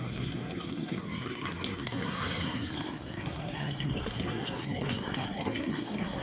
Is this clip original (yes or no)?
no